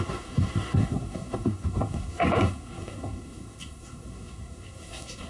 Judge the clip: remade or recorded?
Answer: remade